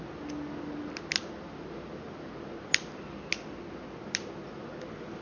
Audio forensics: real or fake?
real